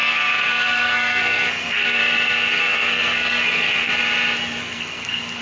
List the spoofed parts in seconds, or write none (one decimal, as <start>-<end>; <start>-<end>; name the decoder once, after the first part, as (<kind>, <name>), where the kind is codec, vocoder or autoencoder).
0.0-2.0 (codec, SNAC); 2.5-3.9; 4.6-5.4

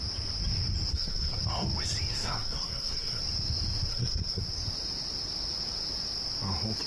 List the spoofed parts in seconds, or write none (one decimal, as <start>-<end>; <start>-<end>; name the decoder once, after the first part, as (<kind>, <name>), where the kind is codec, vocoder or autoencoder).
0.9-1.4 (codec, SNAC); 2.1-3.2; 3.9-4.4

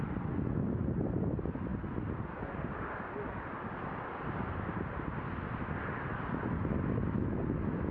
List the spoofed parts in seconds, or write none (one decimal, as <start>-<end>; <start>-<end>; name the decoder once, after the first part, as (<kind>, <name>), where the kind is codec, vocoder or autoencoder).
none

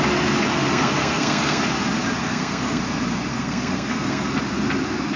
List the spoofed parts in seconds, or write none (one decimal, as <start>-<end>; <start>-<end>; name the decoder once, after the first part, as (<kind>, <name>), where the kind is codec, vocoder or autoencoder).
0.7-1.6 (codec, SNAC); 2.2-2.8; 3.3-4.4

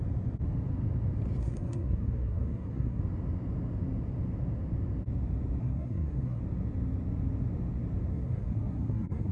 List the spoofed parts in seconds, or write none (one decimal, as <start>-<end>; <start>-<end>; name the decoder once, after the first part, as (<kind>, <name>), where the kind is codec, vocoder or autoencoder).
1.4-3.0 (codec, SNAC); 5.6-6.4; 8.1-9.3

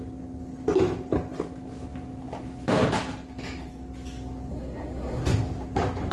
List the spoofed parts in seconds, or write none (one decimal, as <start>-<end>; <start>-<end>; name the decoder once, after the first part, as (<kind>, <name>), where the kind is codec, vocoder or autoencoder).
4.5-5.2 (codec, SNAC)

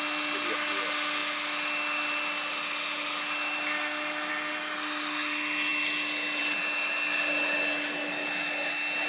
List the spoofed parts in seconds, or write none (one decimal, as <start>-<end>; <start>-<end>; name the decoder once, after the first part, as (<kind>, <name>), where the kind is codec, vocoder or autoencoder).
none

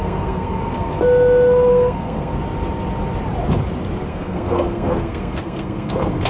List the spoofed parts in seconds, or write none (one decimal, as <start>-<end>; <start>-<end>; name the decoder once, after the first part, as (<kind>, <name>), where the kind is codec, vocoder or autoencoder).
0.0-1.0 (codec, SNAC); 1.7-2.3; 4.1-6.3